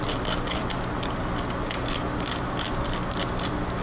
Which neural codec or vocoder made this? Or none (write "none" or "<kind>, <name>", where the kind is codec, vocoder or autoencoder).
none